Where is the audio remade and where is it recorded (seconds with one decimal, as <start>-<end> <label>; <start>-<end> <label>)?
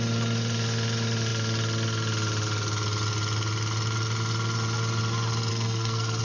0.0-5.5 recorded; 5.5-6.2 remade